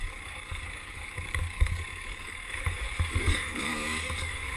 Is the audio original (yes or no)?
no